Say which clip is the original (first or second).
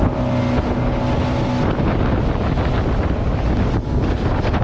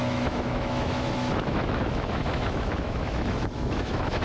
first